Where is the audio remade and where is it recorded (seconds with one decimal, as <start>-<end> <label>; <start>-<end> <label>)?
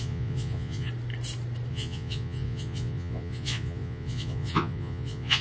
0.0-0.9 remade; 0.9-1.7 recorded; 1.7-5.4 remade